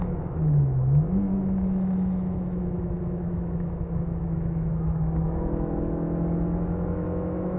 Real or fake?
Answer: fake